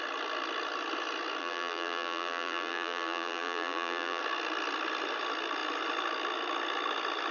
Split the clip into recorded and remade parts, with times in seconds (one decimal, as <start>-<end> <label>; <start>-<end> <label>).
0.0-1.4 recorded; 1.4-4.2 remade; 4.2-7.3 recorded